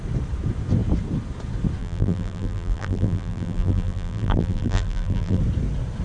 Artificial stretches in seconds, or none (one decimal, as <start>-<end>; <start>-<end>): 1.8-5.4